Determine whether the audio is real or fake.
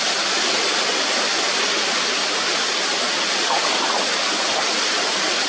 real